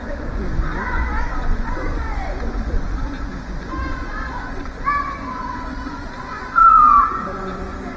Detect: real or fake fake